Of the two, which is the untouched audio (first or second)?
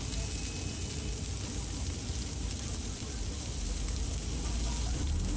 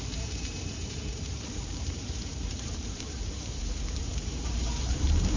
first